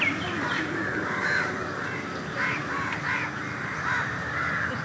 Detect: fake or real fake